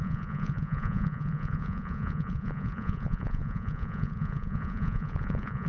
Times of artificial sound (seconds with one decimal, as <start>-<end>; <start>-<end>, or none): 0.0-5.7